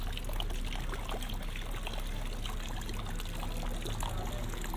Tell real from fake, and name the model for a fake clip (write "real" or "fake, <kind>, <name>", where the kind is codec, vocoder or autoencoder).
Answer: real